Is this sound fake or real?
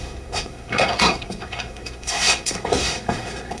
fake